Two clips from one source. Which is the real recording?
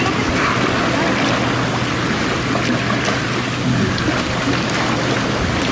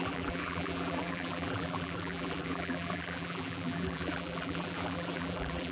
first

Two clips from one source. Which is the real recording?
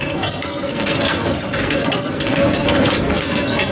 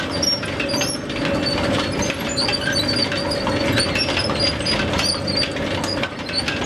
second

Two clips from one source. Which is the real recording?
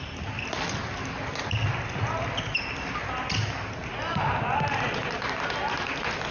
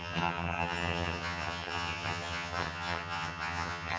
first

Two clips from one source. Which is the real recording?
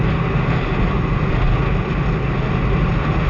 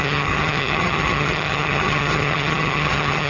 first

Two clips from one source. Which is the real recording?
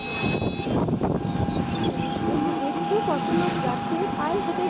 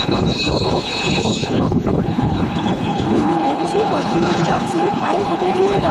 first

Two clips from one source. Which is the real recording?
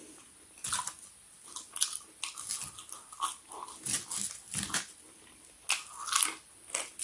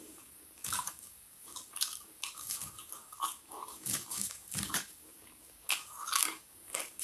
first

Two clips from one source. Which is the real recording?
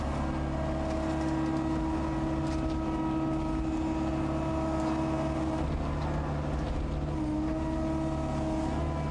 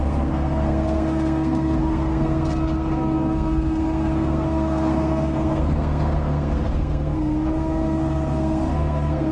first